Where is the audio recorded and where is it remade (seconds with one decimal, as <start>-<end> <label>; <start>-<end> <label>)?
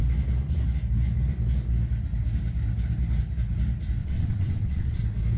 0.0-4.0 recorded; 4.0-5.0 remade; 5.0-5.4 recorded